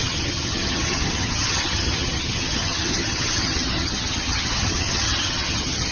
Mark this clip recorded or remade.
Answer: remade